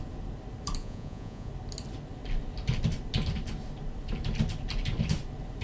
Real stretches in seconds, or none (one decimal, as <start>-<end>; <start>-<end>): 0.0-0.8; 1.5-5.6